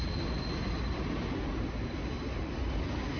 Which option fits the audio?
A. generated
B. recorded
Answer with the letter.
B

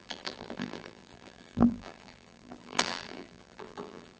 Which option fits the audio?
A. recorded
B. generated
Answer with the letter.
B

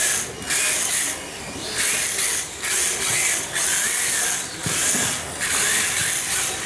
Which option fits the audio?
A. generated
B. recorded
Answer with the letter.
B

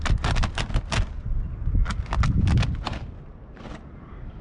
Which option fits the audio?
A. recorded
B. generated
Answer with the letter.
A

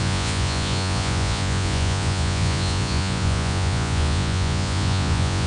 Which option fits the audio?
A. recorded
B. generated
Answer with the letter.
B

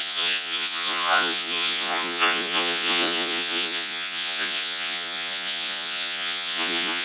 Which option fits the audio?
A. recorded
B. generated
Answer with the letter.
B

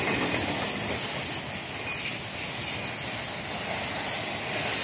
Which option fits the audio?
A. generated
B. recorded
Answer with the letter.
B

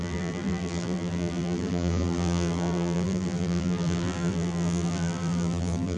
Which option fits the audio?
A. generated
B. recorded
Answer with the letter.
A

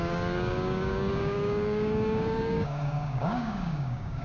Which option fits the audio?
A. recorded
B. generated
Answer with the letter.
B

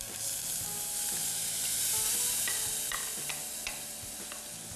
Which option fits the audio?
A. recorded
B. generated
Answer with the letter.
A